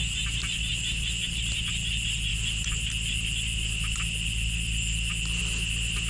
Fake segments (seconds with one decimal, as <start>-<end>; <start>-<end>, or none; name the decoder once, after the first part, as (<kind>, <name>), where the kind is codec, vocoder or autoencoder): none